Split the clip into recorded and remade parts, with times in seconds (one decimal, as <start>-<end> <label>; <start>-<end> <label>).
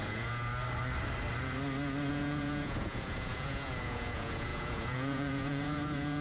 0.0-0.5 remade; 0.5-2.1 recorded; 2.1-6.2 remade